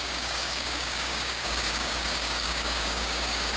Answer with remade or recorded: remade